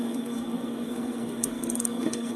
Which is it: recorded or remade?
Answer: remade